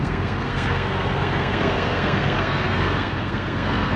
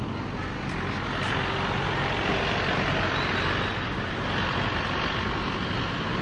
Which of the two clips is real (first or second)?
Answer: second